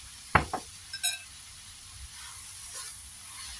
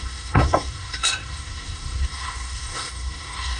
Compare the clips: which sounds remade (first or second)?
second